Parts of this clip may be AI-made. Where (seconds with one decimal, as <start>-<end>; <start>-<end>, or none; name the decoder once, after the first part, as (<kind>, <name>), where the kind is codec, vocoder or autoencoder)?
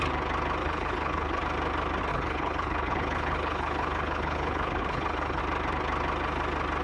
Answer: 0.6-1.4 (codec, HILCodec); 2.1-5.4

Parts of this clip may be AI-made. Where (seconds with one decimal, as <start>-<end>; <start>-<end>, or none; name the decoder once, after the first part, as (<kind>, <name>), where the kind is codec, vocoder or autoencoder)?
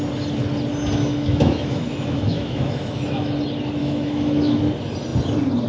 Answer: 1.0-3.3 (autoencoder, DAC-VAE); 3.8-4.6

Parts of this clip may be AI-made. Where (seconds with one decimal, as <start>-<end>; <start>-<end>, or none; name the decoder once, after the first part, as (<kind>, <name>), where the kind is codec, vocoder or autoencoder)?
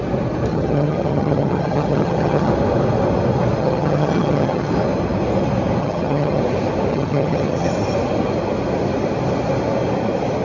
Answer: 0.5-2.5 (vocoder, HiFi-GAN); 3.6-4.7; 5.8-6.4; 6.9-7.7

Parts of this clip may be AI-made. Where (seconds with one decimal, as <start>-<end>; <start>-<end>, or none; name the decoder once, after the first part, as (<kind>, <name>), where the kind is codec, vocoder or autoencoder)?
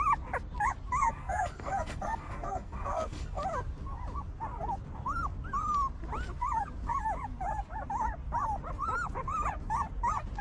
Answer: 1.0-3.4 (codec, SNAC)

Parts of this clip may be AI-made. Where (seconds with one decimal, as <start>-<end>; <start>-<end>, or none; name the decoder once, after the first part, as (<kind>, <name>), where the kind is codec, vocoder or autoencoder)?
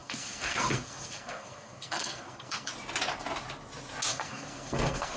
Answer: 0.0-2.7 (codec, SNAC); 4.1-5.2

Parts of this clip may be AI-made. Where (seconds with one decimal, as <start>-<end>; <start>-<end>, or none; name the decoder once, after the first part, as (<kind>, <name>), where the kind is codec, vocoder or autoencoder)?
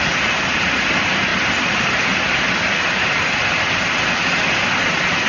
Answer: none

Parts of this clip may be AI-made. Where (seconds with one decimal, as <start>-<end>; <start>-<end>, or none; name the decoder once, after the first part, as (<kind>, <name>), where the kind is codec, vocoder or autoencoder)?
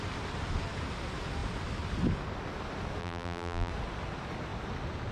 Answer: 3.0-3.7 (vocoder, BigVGAN v2)